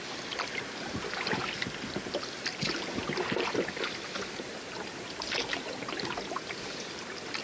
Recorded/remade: recorded